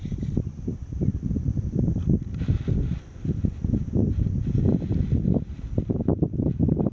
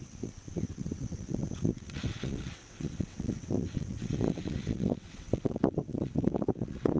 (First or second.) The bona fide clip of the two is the first